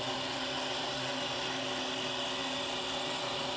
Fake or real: real